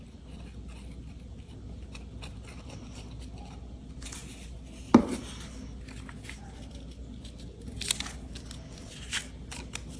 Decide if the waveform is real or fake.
real